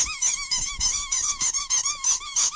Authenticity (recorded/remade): remade